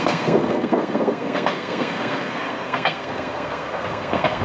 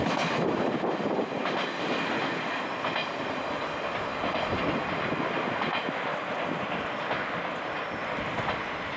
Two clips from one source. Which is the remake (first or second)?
first